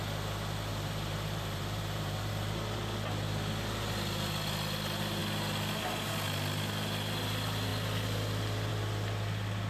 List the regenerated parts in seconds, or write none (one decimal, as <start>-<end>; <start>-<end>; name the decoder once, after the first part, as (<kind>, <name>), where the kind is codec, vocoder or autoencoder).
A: 0.7-2.3 (vocoder, BigVGAN v2)